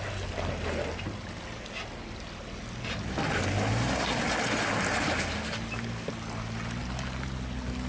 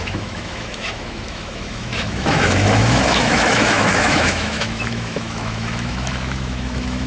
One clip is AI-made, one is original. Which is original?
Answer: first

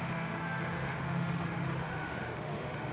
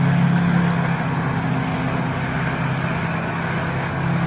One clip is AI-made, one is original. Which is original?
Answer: second